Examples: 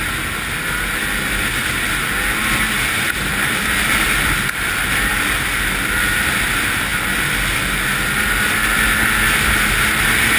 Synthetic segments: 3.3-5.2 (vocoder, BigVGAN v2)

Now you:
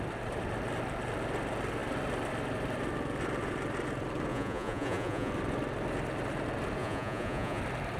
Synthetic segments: 4.3-5.3 (vocoder, Vocos); 6.8-7.6

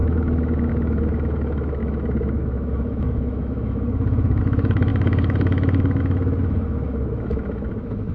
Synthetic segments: 0.0-8.1 (autoencoder, DAC-VAE)

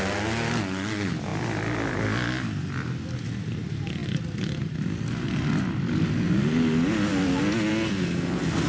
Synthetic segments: none

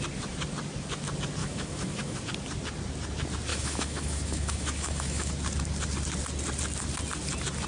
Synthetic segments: 1.4-2.2 (autoencoder, DAC-VAE); 3.5-5.3

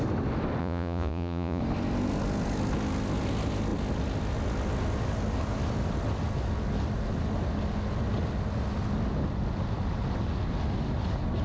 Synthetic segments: 0.6-1.6 (vocoder, Vocos)

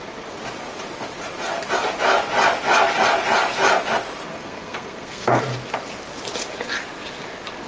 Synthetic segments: 4.3-5.4 (codec, SNAC)

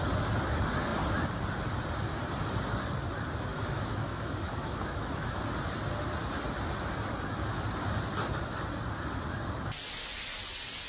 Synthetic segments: 3.5-5.4 (autoencoder, DAC-VAE)